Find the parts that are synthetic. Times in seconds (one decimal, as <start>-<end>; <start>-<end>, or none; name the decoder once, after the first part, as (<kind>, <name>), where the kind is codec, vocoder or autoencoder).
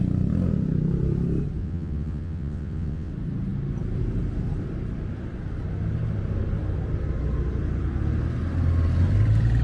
1.6-3.1 (vocoder, WaveNeXt)